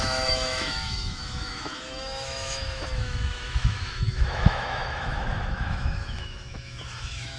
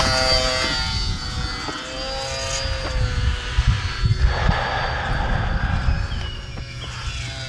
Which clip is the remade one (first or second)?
first